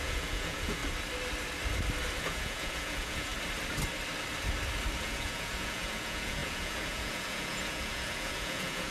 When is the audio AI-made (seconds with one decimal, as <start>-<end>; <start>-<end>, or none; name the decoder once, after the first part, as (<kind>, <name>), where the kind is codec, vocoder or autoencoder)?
0.0-0.8 (vocoder, Vocos); 2.2-3.3; 5.0-8.9